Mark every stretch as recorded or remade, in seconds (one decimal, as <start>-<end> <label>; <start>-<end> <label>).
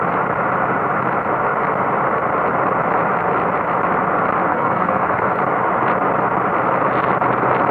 0.0-4.5 recorded; 4.5-5.4 remade; 5.4-7.7 recorded